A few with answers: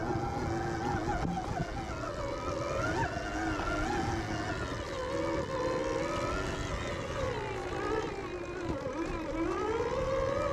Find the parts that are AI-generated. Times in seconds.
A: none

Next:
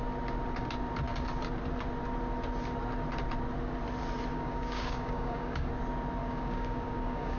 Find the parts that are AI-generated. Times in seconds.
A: 4.3-5.7 (codec, DAC); 6.2-7.4

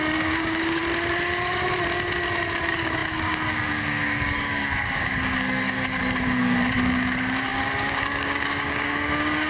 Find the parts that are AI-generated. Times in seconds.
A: 0.0-0.8 (codec, DAC); 2.6-9.5

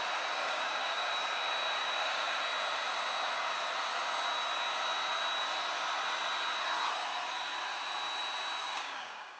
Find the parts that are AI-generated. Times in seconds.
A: 0.4-1.1 (codec, DAC); 1.8-2.4; 8.6-9.4

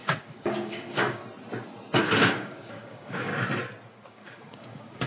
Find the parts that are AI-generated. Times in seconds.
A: 0.0-1.2 (codec, DAC); 2.0-3.3; 3.9-5.1

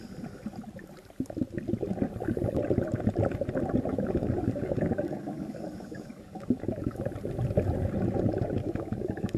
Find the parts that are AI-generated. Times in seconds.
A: 3.9-7.0 (codec, DAC); 8.6-9.4

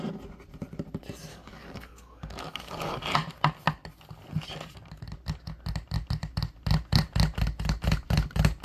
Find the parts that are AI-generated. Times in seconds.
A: 1.3-3.0 (codec, DAC)